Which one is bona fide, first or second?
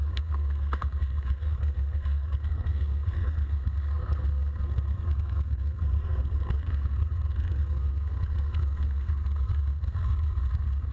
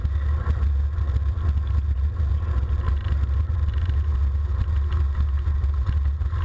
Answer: second